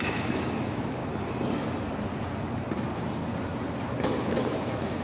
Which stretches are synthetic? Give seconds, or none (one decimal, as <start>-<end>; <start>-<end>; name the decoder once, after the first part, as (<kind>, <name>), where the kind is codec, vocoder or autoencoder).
0.0-1.0 (autoencoder, DAC-VAE); 4.0-5.0